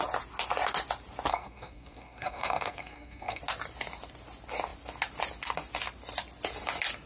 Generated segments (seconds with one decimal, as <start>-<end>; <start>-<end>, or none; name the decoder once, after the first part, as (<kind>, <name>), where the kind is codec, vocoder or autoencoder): 1.3-3.4 (codec, SNAC)